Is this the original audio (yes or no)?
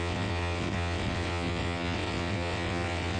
no